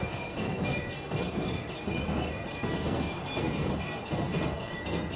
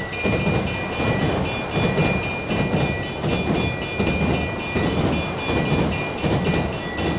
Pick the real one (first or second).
second